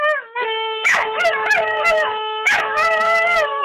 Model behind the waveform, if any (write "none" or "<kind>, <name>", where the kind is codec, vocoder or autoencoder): autoencoder, DAC-VAE